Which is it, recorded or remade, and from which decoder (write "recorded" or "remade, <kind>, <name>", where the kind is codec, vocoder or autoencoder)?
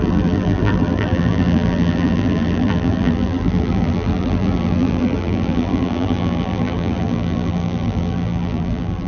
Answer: remade, vocoder, BigVGAN v2